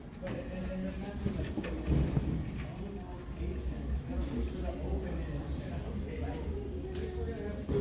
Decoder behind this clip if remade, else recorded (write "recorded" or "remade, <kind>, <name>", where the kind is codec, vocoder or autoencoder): recorded